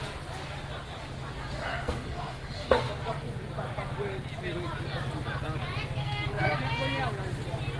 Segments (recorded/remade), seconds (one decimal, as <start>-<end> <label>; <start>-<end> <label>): 0.0-1.7 recorded; 1.7-2.9 remade; 2.9-6.0 recorded; 6.0-6.6 remade; 6.6-7.8 recorded